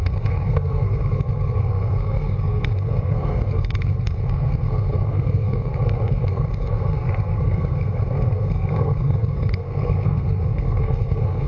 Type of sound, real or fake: fake